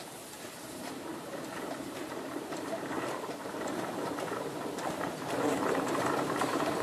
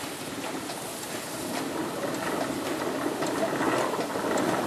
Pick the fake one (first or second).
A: first